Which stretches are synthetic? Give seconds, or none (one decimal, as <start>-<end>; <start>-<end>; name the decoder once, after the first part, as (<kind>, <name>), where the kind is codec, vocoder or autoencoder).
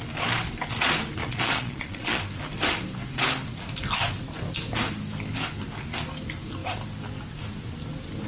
1.2-2.2 (vocoder, Vocos)